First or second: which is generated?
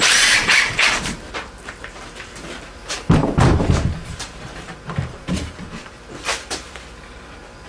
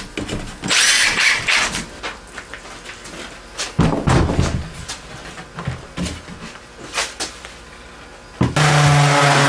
first